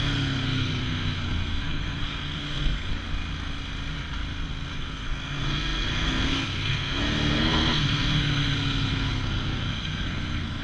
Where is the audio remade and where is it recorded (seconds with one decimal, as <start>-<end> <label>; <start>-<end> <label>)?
0.0-2.9 remade; 2.9-4.8 recorded; 4.8-10.6 remade